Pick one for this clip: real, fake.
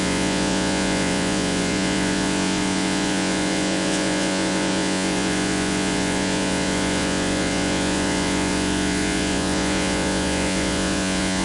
fake